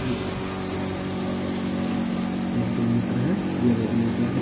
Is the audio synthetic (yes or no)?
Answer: no